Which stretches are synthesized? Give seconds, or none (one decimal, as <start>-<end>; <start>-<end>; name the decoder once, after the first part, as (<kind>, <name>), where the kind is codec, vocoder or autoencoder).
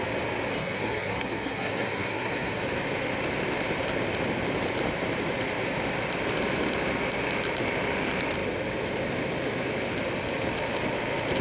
0.5-2.6 (codec, SNAC)